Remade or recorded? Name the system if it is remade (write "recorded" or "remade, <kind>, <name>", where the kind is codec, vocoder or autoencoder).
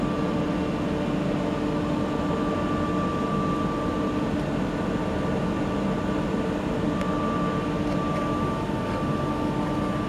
recorded